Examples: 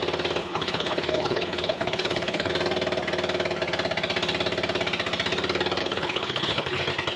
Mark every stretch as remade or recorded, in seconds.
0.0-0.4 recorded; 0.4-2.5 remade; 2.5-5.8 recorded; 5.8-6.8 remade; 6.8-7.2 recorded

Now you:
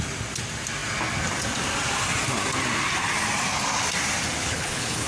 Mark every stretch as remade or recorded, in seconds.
0.0-4.4 recorded; 4.4-5.1 remade

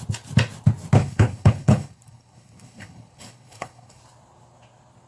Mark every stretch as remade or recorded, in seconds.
0.0-1.0 recorded; 1.0-4.0 remade; 4.0-5.1 recorded

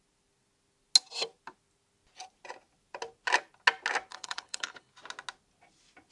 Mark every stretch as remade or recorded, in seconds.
0.0-4.1 recorded; 4.1-4.9 remade; 4.9-6.1 recorded